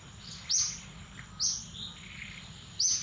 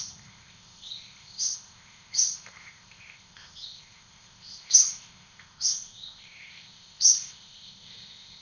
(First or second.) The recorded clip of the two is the first